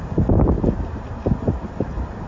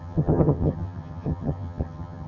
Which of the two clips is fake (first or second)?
second